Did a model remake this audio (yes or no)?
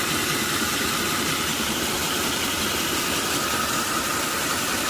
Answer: no